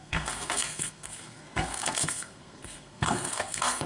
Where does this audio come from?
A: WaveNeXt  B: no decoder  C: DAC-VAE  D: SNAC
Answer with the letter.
D